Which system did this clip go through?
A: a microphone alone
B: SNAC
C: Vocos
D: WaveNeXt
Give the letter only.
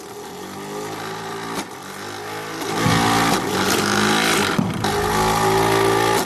A